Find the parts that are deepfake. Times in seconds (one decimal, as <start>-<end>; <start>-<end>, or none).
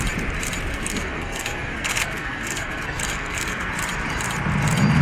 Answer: 0.7-3.7